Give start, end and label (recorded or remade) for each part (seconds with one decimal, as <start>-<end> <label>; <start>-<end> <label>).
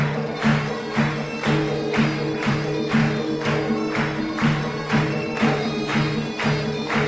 0.0-0.5 remade; 0.5-2.5 recorded; 2.5-3.0 remade; 3.0-4.2 recorded; 4.2-5.9 remade; 5.9-7.1 recorded